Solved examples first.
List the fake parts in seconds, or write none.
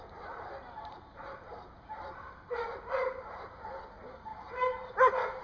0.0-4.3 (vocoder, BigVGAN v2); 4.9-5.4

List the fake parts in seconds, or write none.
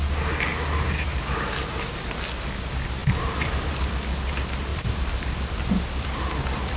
0.5-2.1 (vocoder, BigVGAN v2); 3.0-3.7; 4.7-5.6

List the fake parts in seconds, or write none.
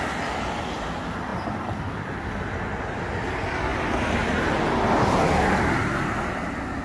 none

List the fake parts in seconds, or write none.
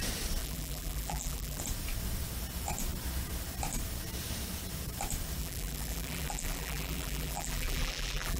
0.4-1.6 (vocoder, BigVGAN v2); 5.4-8.4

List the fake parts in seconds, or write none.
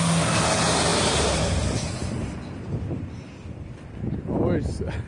0.9-1.4 (vocoder, BigVGAN v2); 2.0-3.9